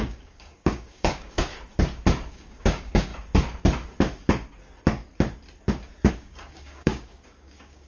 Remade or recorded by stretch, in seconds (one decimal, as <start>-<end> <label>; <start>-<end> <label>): 0.0-1.5 remade; 1.5-2.3 recorded; 2.3-3.1 remade; 3.1-6.1 recorded; 6.1-7.9 remade